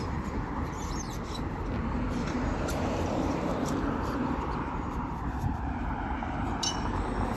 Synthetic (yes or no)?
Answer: yes